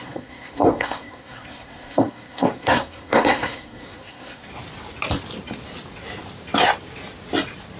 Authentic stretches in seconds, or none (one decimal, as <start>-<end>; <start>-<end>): 4.5-7.8